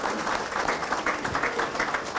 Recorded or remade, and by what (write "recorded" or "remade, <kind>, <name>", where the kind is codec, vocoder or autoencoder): recorded